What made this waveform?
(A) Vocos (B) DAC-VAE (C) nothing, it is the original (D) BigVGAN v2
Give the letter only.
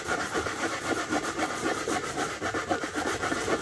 D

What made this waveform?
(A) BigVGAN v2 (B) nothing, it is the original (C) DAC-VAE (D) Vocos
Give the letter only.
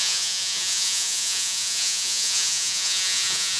D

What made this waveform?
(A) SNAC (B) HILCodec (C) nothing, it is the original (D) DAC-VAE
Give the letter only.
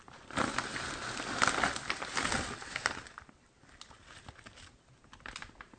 C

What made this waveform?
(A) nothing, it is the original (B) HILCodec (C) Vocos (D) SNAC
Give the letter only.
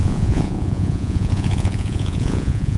C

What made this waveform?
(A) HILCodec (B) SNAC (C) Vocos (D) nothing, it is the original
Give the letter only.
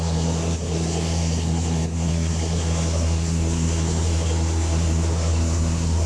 B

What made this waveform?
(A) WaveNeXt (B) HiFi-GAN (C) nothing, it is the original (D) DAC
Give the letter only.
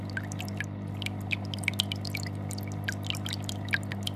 C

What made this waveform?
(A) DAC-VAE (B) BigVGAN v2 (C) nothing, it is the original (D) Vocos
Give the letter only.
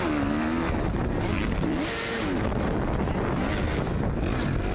C